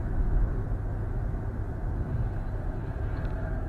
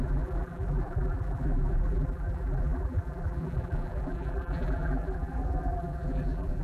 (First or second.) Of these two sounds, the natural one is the first